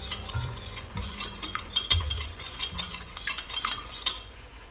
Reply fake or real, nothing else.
fake